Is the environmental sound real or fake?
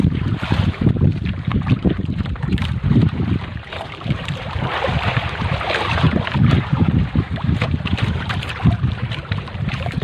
fake